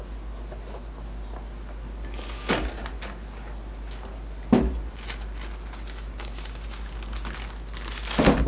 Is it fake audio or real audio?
real